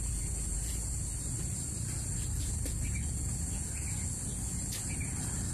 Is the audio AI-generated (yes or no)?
no